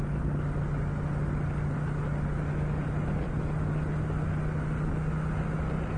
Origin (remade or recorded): recorded